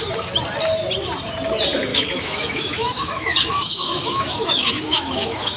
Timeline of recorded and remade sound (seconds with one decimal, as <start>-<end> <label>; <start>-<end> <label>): 0.0-1.9 recorded; 1.9-5.6 remade